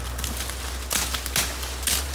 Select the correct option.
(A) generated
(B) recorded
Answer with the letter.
B